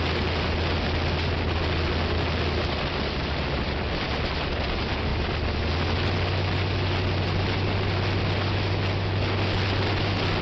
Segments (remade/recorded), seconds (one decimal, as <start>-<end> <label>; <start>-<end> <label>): 0.0-10.4 recorded

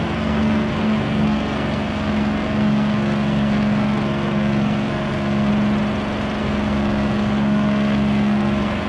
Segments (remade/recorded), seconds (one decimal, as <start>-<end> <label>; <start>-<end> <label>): 0.0-5.5 remade; 5.5-6.4 recorded; 6.4-8.9 remade

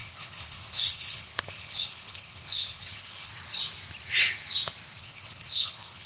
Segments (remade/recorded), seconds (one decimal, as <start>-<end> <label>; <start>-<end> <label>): 0.0-3.3 remade; 3.3-5.0 recorded; 5.0-6.1 remade

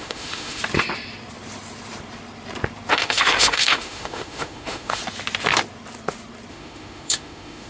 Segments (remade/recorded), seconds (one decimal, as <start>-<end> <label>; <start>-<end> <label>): 0.0-0.6 remade; 0.6-2.9 recorded; 2.9-5.0 remade; 5.0-6.5 recorded; 6.5-7.7 remade

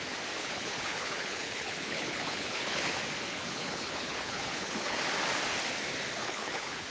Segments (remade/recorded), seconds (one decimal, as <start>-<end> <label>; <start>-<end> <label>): 0.0-0.4 recorded; 0.4-2.9 remade; 2.9-3.3 recorded; 3.3-5.0 remade; 5.0-6.2 recorded; 6.2-6.9 remade

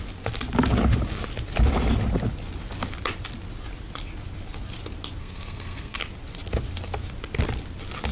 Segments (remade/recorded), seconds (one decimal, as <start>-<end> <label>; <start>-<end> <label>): 0.0-5.2 recorded; 5.2-6.0 remade; 6.0-8.1 recorded

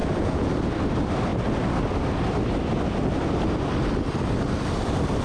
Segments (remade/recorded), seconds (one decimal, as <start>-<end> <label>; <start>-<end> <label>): 0.0-0.5 remade; 0.5-5.2 recorded

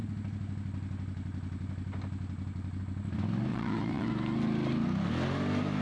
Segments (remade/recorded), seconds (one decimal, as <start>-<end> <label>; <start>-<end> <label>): 0.0-3.5 recorded; 3.5-4.1 remade; 4.1-5.8 recorded